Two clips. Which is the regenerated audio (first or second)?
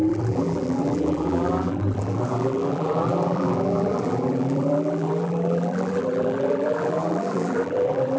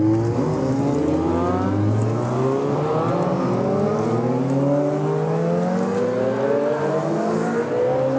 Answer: first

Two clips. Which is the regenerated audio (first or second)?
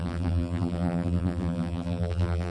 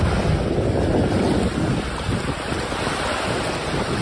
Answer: first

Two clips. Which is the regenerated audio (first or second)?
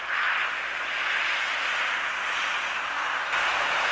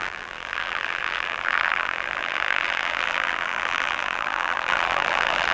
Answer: second